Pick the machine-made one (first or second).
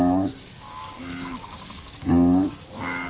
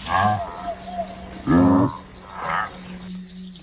first